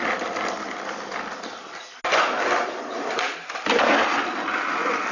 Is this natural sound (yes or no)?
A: yes